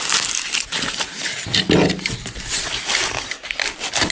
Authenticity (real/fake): real